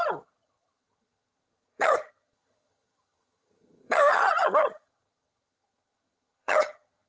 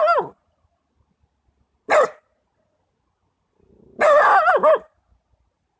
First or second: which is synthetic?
first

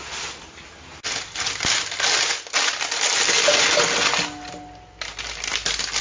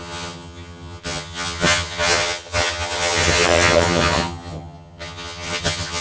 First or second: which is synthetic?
second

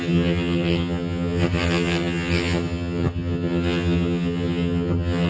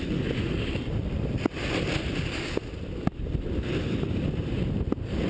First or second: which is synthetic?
first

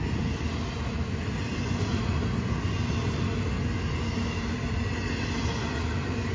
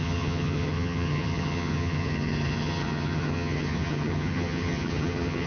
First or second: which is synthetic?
second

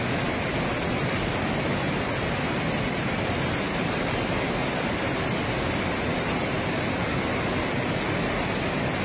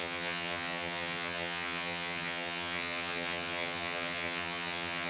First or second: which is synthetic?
second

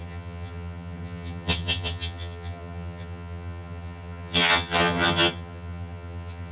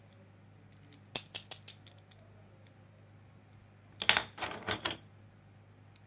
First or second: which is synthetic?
first